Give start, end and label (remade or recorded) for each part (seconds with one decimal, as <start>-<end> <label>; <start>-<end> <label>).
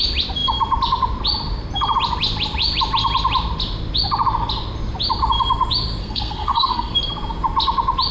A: 0.0-6.0 recorded; 6.0-6.9 remade; 6.9-8.1 recorded